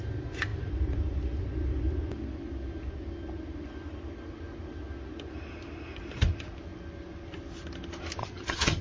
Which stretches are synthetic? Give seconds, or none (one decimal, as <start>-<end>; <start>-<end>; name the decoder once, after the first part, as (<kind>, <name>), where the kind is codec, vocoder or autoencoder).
8.2-8.8 (vocoder, HiFi-GAN)